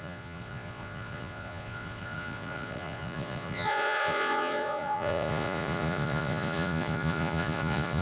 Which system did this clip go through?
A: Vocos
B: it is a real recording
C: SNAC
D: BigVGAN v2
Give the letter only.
A